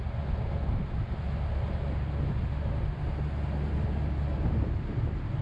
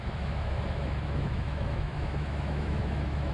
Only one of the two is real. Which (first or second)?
first